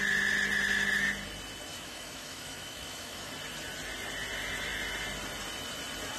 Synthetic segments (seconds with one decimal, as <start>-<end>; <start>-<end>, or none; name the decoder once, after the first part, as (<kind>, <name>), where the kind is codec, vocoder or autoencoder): 1.7-3.3 (autoencoder, DAC-VAE)

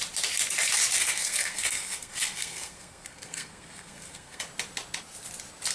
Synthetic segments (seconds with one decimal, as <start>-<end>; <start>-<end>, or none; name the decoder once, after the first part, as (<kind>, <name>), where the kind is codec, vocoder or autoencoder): 1.0-4.4 (codec, SNAC)

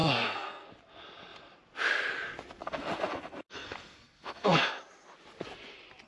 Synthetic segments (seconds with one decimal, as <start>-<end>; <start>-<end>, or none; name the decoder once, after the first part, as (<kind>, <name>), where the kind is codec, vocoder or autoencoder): 0.0-0.7 (codec, SNAC); 2.6-4.8